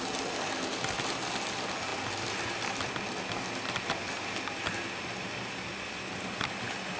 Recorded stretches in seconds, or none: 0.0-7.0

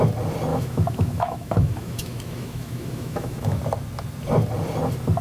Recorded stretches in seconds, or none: 0.0-0.5; 3.6-5.2

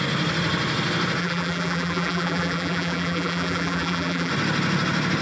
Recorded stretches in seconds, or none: 0.0-1.2; 4.3-5.2

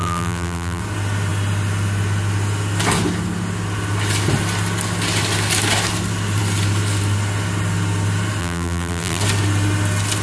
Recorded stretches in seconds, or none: 0.8-8.4; 9.2-10.2

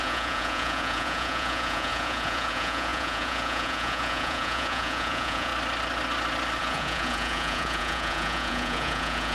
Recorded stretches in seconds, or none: 5.5-6.6

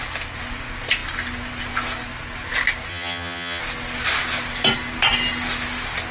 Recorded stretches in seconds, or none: 0.0-2.9; 3.6-6.1

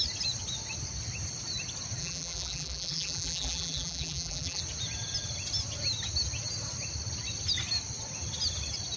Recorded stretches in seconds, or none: 0.0-2.0; 4.6-9.0

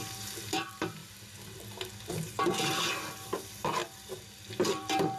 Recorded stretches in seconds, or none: none